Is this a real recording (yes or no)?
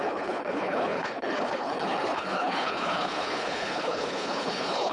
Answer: no